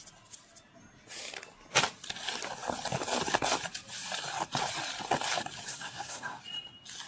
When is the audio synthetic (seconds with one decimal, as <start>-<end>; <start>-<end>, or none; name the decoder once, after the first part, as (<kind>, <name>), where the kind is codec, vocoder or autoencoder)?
5.7-6.4 (codec, SNAC)